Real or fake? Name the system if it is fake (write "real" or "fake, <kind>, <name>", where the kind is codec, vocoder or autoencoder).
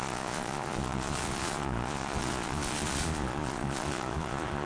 fake, vocoder, Vocos